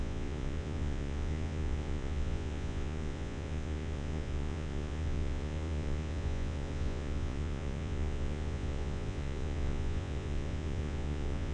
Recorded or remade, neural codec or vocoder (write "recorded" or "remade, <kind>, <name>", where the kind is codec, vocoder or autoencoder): remade, vocoder, Vocos